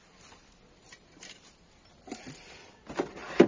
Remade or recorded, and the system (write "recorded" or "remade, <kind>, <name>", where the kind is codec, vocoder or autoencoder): recorded